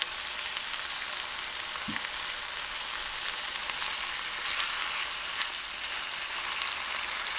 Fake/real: real